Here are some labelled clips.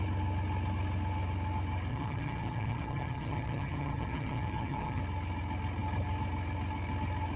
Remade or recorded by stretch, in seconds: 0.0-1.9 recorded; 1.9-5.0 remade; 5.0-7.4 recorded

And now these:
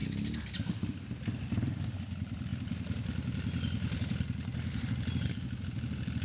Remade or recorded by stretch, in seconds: 0.0-6.2 recorded

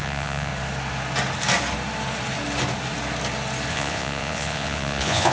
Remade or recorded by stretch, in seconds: 0.0-0.5 remade; 0.5-3.7 recorded; 3.7-5.3 remade

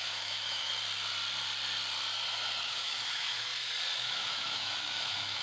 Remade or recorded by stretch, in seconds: 0.0-0.7 remade; 0.7-2.6 recorded; 2.6-3.5 remade; 3.5-4.0 recorded; 4.0-5.4 remade